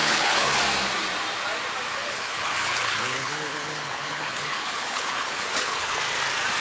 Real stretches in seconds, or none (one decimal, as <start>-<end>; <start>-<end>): 0.6-2.0; 6.0-6.6